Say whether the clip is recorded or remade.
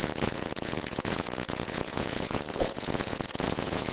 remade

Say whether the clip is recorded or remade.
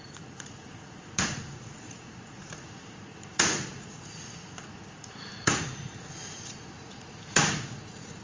remade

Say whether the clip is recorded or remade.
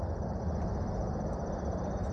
recorded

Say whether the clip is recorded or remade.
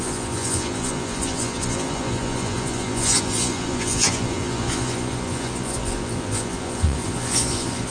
remade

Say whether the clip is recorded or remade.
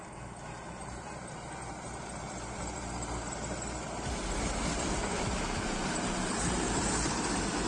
remade